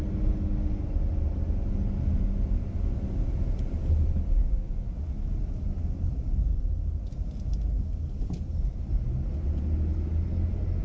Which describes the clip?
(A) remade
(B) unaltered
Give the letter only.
B